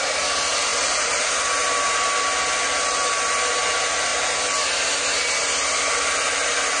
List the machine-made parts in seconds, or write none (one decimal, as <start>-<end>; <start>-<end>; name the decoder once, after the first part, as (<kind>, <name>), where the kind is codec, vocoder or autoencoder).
none

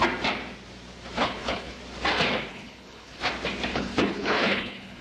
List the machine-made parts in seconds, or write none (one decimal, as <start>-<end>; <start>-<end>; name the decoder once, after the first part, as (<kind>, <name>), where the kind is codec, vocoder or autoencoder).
1.2-1.8 (codec, HILCodec); 2.5-3.3; 3.7-5.0

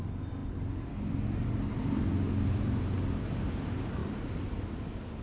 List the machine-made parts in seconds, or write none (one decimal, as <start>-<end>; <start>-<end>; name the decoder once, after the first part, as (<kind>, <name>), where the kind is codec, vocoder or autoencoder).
none

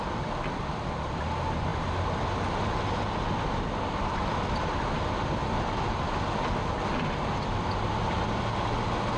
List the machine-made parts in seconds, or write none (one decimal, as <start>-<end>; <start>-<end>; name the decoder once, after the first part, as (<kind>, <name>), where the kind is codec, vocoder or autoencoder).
none

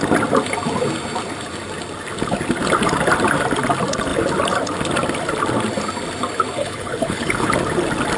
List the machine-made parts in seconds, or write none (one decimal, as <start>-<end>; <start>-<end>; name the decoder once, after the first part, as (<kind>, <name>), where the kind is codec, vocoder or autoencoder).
6.6-7.5 (codec, HILCodec)

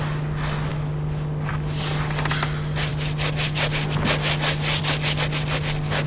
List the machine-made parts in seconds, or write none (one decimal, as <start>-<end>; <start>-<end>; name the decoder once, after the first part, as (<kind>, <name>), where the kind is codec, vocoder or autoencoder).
none

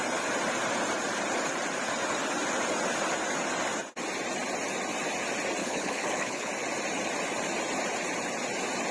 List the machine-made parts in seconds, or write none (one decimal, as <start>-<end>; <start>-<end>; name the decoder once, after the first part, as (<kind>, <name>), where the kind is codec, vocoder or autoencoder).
5.6-6.5 (codec, HILCodec)

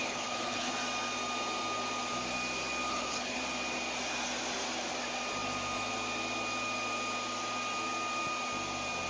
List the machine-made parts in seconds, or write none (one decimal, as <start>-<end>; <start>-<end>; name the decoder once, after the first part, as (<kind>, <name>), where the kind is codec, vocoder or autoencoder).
0.0-0.7 (codec, HILCodec); 2.9-3.4